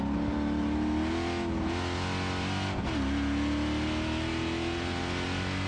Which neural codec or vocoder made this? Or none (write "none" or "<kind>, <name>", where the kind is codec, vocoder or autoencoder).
none